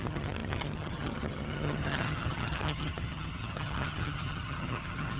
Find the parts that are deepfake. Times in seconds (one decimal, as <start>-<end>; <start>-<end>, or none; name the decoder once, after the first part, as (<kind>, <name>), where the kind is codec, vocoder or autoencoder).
0.0-5.2 (vocoder, HiFi-GAN)